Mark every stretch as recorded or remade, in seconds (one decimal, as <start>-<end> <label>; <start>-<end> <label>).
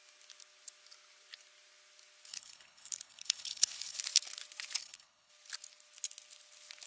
0.0-2.3 recorded; 2.3-4.0 remade; 4.0-4.8 recorded; 4.8-5.3 remade; 5.3-6.9 recorded